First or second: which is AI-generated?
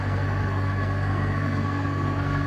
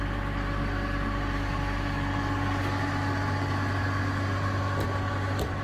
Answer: first